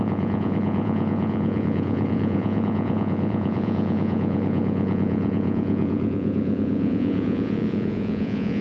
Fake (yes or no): yes